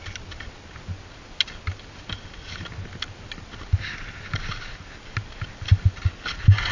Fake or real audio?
real